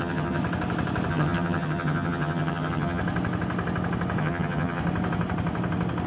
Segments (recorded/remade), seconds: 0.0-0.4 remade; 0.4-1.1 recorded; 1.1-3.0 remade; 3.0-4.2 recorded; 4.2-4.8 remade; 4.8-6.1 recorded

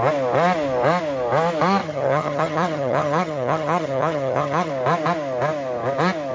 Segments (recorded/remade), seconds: 0.0-1.8 recorded; 1.8-4.7 remade; 4.7-6.3 recorded

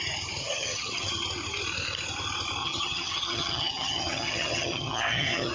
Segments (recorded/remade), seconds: 0.0-0.4 recorded; 0.4-1.1 remade; 1.1-2.6 recorded; 2.6-5.5 remade

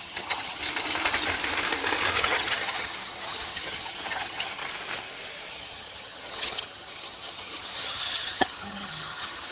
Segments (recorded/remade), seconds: 0.0-0.6 remade; 0.6-2.2 recorded; 2.2-4.6 remade; 4.6-5.5 recorded; 5.5-9.5 remade